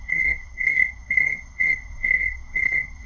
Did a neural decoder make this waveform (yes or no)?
yes